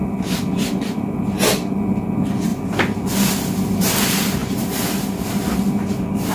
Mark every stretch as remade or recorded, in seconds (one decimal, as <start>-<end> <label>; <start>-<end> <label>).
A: 0.0-2.5 recorded; 2.5-3.0 remade; 3.0-4.4 recorded; 4.4-5.2 remade; 5.2-6.3 recorded